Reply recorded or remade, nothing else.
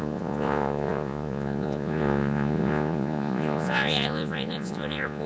remade